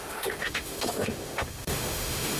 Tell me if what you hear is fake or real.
fake